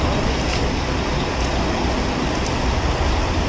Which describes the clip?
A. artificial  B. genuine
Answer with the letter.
B